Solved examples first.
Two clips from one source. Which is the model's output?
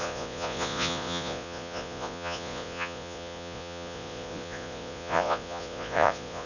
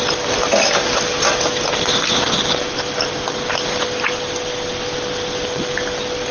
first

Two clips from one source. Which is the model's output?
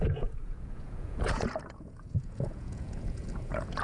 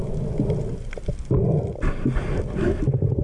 first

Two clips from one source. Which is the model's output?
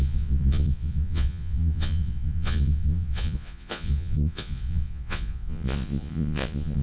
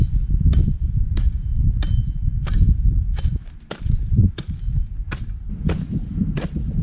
first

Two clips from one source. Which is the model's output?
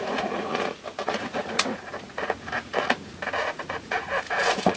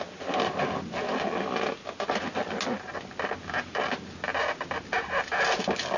first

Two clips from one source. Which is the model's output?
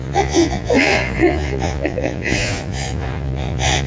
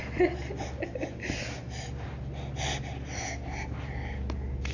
first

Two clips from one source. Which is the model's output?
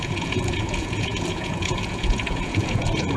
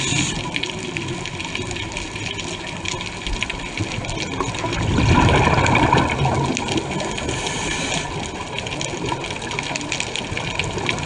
first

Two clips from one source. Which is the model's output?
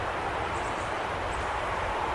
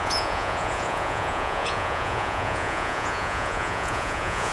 second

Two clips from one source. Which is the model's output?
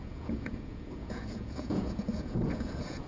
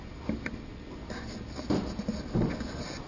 first